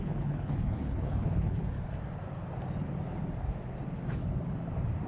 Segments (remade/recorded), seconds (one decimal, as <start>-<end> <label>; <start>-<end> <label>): 0.0-1.7 remade; 1.7-5.1 recorded